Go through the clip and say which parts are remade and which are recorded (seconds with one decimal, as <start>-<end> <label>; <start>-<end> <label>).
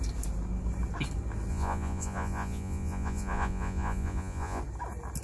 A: 0.0-1.5 recorded; 1.5-4.6 remade; 4.6-5.2 recorded